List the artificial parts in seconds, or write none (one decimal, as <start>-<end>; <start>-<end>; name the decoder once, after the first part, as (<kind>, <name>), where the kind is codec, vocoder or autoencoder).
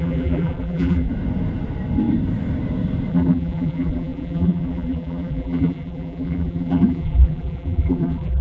0.0-1.1 (vocoder, BigVGAN v2); 3.1-8.4